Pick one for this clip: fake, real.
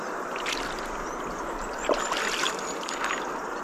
real